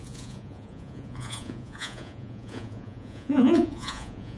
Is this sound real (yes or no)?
no